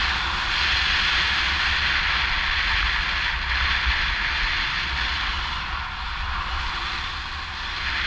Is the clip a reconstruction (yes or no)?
no